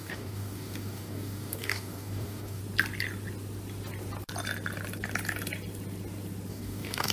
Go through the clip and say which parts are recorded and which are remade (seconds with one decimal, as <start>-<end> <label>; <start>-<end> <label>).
0.0-2.6 remade; 2.6-6.5 recorded; 6.5-7.1 remade

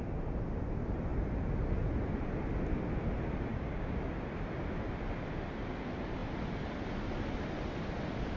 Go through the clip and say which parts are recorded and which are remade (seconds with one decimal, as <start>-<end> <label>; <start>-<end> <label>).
0.0-3.5 recorded; 3.5-4.0 remade; 4.0-8.4 recorded

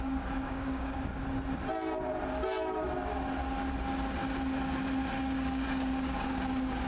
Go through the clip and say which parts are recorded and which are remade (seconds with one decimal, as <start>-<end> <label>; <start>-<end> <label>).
0.0-1.1 remade; 1.1-5.2 recorded; 5.2-6.9 remade

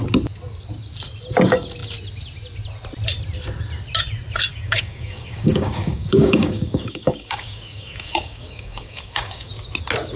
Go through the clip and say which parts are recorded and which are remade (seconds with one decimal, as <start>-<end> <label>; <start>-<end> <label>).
0.0-4.5 recorded; 4.5-9.5 remade; 9.5-10.2 recorded

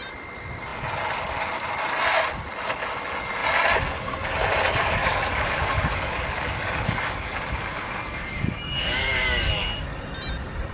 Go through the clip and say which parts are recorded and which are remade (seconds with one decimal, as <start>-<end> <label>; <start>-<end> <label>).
0.0-5.0 recorded; 5.0-10.0 remade; 10.0-10.7 recorded

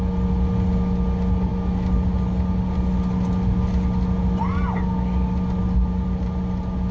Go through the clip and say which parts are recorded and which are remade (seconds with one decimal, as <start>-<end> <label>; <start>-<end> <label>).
0.0-6.9 recorded

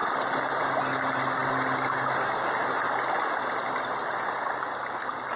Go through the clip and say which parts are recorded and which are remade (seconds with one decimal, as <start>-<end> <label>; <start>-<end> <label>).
0.0-5.4 recorded

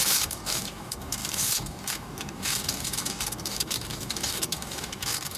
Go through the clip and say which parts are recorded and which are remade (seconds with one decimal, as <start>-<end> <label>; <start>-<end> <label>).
0.0-5.4 remade